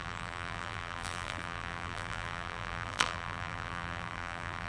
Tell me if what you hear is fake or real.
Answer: fake